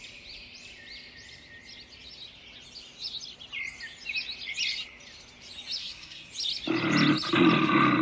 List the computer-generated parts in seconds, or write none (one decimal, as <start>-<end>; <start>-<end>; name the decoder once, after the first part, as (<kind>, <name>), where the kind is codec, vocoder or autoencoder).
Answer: 5.8-6.3 (codec, SNAC)